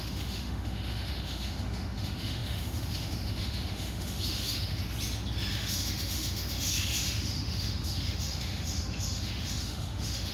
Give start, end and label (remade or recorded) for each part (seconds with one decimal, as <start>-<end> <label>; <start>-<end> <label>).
0.0-4.8 remade; 4.8-5.5 recorded; 5.5-10.3 remade